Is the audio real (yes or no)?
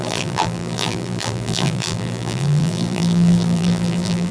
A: no